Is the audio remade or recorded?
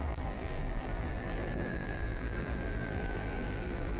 remade